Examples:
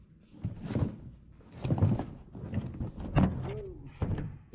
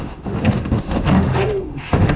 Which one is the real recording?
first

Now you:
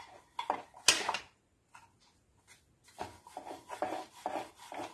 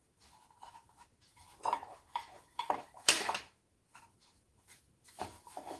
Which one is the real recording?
first